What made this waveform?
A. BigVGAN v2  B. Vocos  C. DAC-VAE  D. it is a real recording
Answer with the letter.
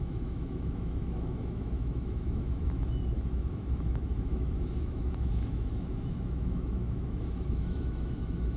C